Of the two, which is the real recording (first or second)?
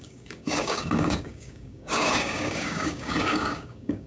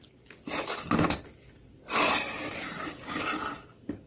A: second